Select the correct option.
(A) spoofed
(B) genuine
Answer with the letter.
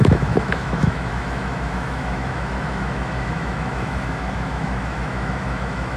A